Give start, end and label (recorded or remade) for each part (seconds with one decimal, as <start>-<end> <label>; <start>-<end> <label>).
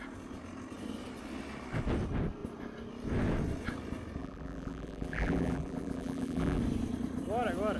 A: 0.0-4.2 recorded; 4.2-6.6 remade; 6.6-7.8 recorded